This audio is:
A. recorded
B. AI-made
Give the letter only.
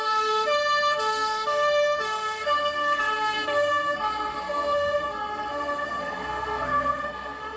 B